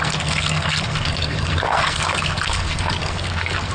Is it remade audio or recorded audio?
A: remade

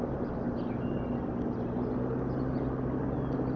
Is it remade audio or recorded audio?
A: recorded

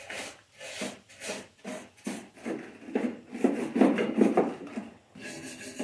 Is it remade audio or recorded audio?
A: recorded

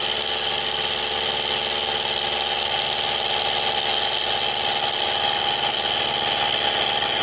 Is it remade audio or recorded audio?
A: recorded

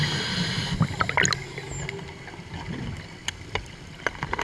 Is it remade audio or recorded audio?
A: recorded